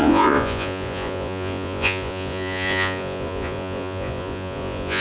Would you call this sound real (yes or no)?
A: no